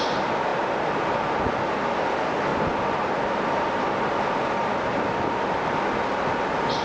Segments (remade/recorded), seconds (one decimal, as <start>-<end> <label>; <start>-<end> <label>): 0.0-6.8 recorded